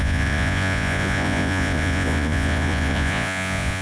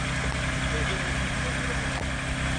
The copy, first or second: first